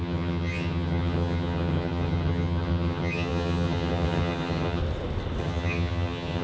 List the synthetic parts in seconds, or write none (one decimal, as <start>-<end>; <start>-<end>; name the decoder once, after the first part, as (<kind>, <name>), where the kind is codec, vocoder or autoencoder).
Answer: 0.0-4.8 (vocoder, HiFi-GAN); 5.4-6.4